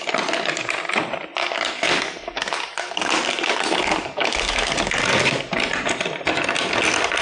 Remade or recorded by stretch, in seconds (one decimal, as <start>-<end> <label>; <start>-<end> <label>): 0.0-1.4 recorded; 1.4-5.4 remade; 5.4-7.2 recorded